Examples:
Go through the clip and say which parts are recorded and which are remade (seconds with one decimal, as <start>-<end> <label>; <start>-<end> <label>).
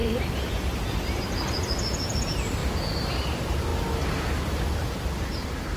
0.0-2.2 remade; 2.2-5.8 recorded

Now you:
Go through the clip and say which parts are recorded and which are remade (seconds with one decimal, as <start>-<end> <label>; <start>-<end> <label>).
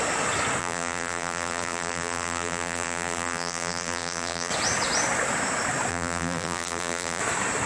0.0-0.6 recorded; 0.6-4.5 remade; 4.5-5.9 recorded; 5.9-7.2 remade; 7.2-7.7 recorded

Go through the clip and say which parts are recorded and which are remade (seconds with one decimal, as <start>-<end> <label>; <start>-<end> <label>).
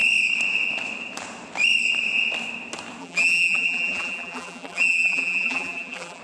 0.0-3.0 recorded; 3.0-6.2 remade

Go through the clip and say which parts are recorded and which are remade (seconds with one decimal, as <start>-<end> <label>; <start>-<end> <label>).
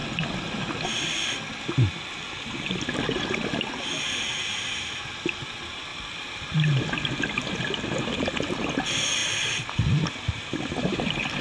0.0-11.4 recorded